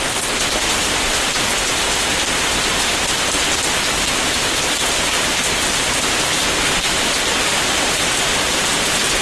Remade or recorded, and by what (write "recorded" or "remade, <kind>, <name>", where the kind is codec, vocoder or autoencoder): recorded